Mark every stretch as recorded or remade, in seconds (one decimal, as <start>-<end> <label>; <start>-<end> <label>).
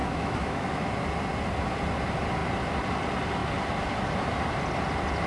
0.0-0.9 remade; 0.9-5.3 recorded